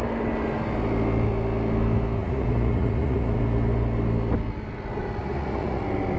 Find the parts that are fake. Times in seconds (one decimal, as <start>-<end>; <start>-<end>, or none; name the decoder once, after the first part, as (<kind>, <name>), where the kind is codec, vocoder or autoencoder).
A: 2.2-3.4 (vocoder, Vocos); 5.2-5.8